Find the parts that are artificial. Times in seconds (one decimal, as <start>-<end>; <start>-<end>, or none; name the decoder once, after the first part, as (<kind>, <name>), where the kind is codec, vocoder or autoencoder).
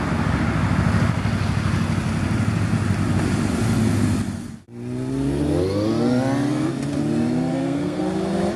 7.5-8.0 (codec, SNAC)